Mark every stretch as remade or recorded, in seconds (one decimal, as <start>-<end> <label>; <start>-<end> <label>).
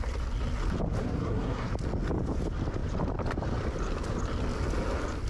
0.0-1.0 recorded; 1.0-1.7 remade; 1.7-5.3 recorded